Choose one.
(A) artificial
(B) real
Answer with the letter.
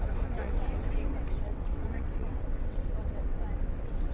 A